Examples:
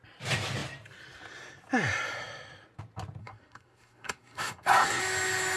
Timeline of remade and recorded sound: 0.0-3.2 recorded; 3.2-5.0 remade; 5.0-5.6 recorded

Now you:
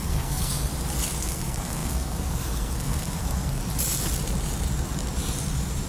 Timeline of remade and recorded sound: 0.0-0.7 remade; 0.7-1.2 recorded; 1.2-3.6 remade; 3.6-5.9 recorded

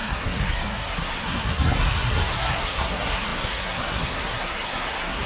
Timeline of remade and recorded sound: 0.0-5.3 remade

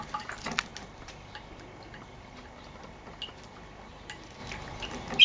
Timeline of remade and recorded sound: 0.0-5.2 recorded